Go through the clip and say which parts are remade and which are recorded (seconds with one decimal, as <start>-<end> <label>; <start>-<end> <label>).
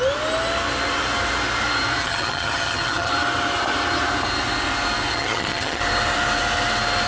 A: 0.0-2.0 recorded; 2.0-3.1 remade; 3.1-5.1 recorded; 5.1-5.8 remade; 5.8-7.1 recorded